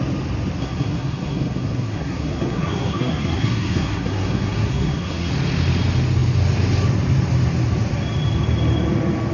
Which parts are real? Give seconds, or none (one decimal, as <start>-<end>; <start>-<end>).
0.0-0.6; 5.3-9.3